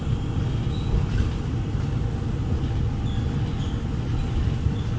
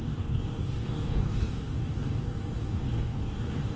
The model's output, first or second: second